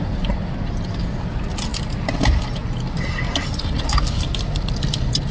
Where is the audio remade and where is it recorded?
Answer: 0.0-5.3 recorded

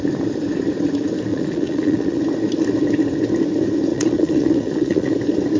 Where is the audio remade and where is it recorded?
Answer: 0.0-1.3 recorded; 1.3-2.2 remade; 2.2-3.9 recorded; 3.9-5.1 remade; 5.1-5.6 recorded